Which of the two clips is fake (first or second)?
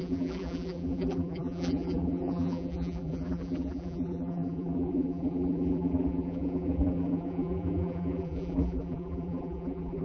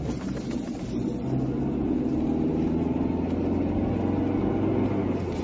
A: first